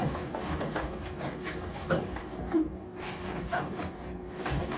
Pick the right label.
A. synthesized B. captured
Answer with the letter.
A